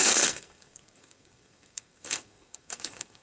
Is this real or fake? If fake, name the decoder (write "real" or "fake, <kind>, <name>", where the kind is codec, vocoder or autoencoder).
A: fake, codec, SNAC